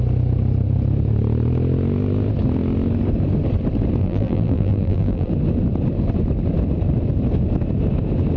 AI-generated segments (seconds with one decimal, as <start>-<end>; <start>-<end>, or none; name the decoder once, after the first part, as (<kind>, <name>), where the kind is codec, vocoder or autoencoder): 4.0-5.3 (vocoder, BigVGAN v2)